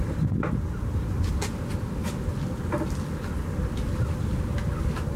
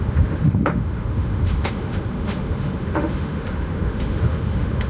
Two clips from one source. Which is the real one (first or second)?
first